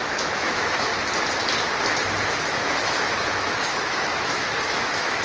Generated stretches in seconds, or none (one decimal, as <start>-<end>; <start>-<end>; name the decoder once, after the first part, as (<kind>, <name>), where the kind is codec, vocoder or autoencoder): 0.0-0.9 (autoencoder, DAC-VAE); 2.5-5.2